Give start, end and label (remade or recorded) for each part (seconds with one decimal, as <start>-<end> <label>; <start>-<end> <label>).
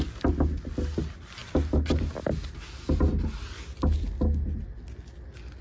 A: 0.0-5.6 recorded